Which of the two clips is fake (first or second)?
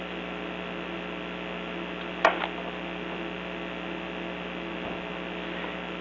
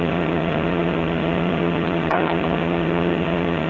second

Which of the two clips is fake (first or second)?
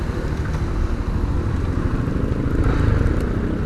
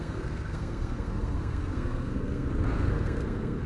second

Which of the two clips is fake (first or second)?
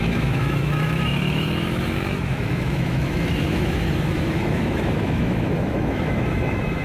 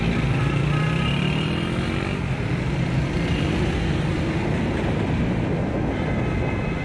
first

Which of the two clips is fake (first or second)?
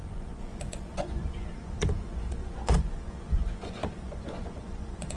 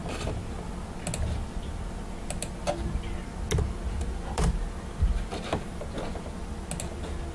first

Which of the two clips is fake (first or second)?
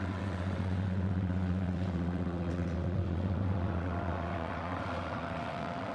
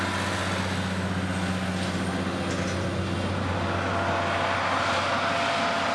first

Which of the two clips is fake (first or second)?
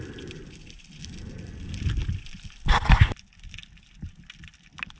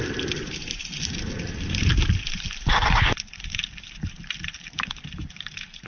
second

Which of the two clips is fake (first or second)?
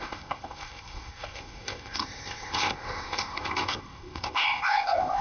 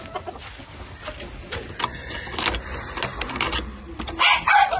first